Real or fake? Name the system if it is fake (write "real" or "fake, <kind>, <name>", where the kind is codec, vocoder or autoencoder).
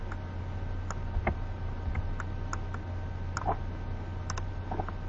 real